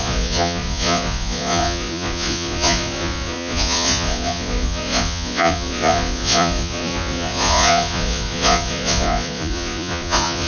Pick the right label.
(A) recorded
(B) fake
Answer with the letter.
B